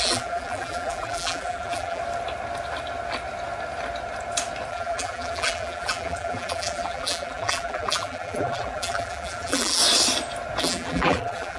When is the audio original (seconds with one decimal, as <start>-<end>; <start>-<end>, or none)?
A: 2.0-4.7; 9.8-10.6